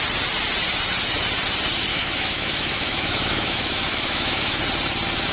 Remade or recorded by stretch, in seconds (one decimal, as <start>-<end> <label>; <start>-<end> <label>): 0.0-1.9 recorded; 1.9-4.6 remade; 4.6-5.3 recorded